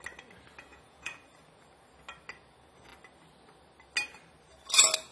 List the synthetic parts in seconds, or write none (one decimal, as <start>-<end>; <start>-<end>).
0.7-1.2